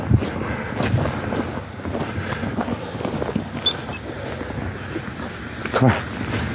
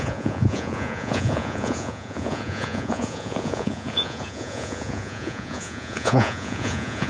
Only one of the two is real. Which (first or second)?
first